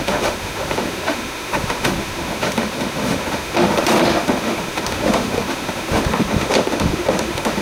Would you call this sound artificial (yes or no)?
yes